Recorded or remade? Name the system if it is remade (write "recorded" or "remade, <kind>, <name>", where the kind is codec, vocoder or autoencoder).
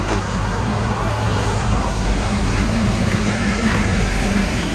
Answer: remade, codec, SNAC